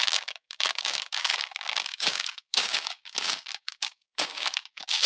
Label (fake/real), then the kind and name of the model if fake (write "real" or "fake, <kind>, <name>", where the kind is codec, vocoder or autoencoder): fake, codec, DAC